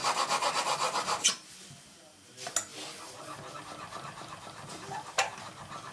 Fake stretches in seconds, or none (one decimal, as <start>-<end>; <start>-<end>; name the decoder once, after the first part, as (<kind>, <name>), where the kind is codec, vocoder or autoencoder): 2.7-3.6 (vocoder, BigVGAN v2)